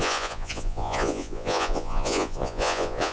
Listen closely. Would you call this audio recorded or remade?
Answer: remade